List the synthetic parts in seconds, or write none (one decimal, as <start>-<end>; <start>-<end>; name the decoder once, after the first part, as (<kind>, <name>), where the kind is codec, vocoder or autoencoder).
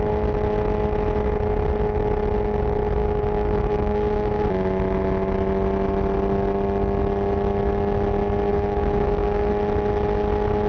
3.0-4.5 (codec, DAC); 8.5-9.5